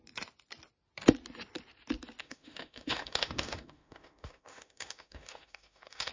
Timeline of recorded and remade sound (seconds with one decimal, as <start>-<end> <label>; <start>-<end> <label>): 0.0-2.2 recorded; 2.2-6.1 remade